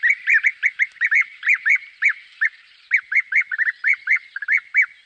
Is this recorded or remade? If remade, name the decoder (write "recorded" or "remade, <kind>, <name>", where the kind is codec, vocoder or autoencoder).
recorded